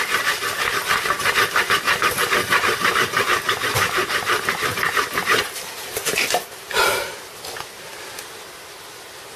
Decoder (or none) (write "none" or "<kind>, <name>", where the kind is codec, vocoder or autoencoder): none